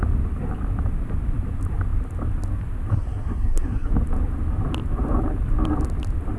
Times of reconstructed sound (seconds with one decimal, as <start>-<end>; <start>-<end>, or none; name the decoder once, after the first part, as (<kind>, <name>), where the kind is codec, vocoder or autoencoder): 2.9-3.9 (codec, SNAC)